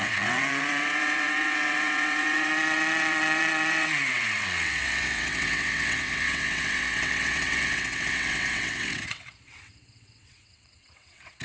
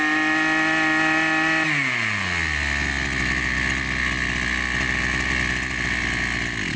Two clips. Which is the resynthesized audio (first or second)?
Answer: first